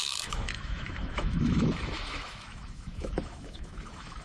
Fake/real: fake